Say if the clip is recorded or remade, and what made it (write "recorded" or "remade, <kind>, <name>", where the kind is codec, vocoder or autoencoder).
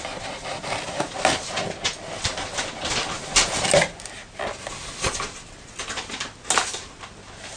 recorded